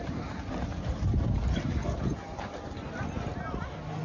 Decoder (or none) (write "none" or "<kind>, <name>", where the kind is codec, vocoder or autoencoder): none